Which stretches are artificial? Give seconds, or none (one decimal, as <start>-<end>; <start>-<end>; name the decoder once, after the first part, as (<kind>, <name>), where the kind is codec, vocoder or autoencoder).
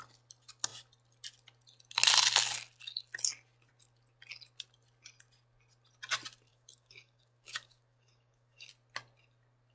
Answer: 6.5-8.7 (codec, DAC)